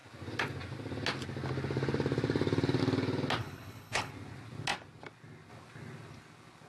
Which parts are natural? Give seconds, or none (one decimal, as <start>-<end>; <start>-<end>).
0.0-3.4; 4.1-6.7